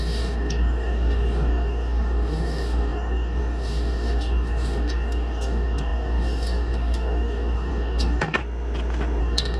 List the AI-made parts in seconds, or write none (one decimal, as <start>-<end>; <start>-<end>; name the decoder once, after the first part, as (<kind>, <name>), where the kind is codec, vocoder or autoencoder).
0.0-8.4 (codec, DAC); 9.2-9.6